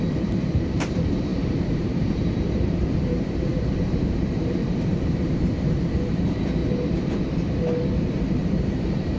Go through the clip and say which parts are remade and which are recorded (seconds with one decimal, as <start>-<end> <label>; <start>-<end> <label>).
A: 0.0-6.6 remade; 6.6-8.6 recorded; 8.6-9.2 remade